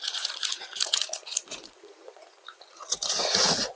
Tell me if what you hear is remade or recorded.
remade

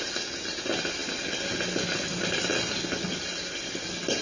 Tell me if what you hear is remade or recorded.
recorded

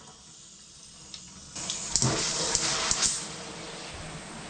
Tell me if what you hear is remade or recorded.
recorded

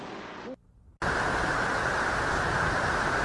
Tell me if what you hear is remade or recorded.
recorded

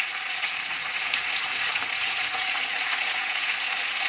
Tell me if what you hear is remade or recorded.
remade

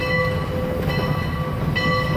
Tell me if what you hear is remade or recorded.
recorded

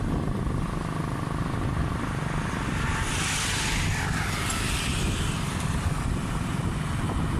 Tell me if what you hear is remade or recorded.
recorded